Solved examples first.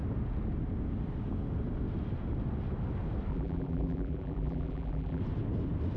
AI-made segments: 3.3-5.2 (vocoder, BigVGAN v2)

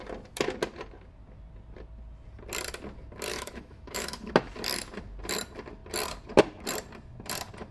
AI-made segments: 3.3-4.3 (autoencoder, DAC-VAE)

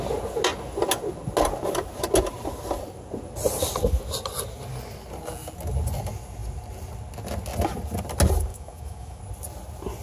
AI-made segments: 8.5-9.2 (autoencoder, DAC-VAE)

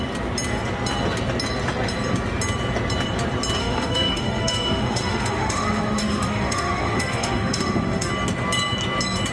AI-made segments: 3.6-8.1 (autoencoder, DAC-VAE)

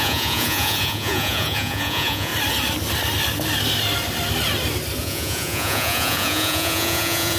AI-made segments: 0.0-2.3 (vocoder, Vocos); 5.0-7.4

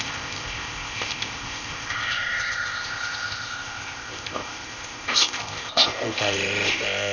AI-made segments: 0.0-7.1 (codec, ZipCodec)

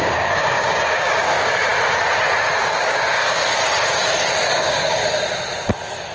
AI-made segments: 0.0-1.7 (codec, DAC); 2.6-3.6; 4.5-5.0